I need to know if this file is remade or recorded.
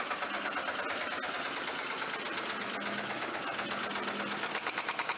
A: recorded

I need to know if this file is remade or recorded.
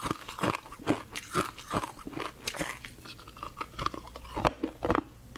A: recorded